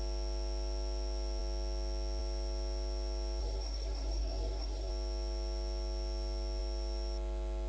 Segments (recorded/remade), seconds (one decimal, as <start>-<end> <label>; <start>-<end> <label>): 0.0-3.4 recorded; 3.4-4.9 remade; 4.9-7.7 recorded